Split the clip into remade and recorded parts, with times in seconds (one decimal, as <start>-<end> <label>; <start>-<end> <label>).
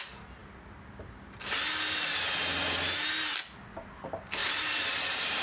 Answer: 0.0-4.4 recorded; 4.4-5.4 remade